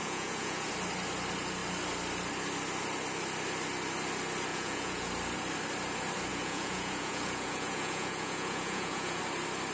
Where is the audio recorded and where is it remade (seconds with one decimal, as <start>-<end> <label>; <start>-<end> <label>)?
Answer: 0.0-0.7 remade; 0.7-4.5 recorded; 4.5-5.1 remade; 5.1-6.3 recorded; 6.3-9.2 remade; 9.2-9.7 recorded